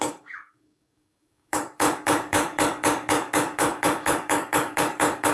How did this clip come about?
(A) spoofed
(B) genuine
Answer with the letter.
A